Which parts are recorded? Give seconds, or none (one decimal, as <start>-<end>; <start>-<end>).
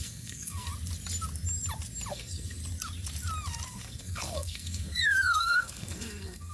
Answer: 0.7-2.1; 2.6-3.7